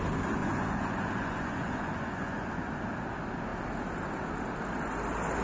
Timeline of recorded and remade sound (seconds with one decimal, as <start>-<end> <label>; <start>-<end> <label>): 0.0-0.4 recorded; 0.4-2.7 remade; 2.7-5.4 recorded